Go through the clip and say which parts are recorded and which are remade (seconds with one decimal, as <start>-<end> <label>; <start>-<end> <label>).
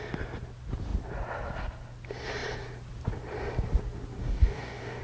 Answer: 0.0-4.2 recorded; 4.2-5.0 remade